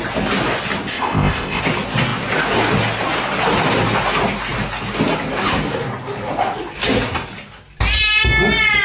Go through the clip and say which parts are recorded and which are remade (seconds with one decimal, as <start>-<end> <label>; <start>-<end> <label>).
0.0-0.9 recorded; 0.9-1.6 remade; 1.6-8.8 recorded